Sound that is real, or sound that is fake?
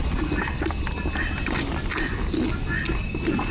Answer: real